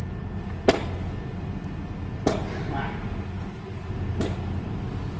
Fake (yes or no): no